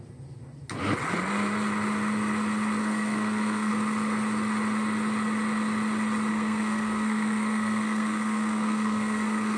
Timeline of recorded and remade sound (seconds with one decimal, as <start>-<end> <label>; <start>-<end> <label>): 0.0-2.8 recorded; 2.8-3.7 remade; 3.7-6.3 recorded; 6.3-9.6 remade